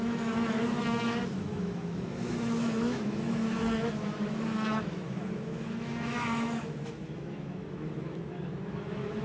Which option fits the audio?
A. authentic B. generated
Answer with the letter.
B